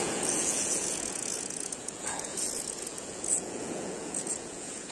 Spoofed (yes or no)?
yes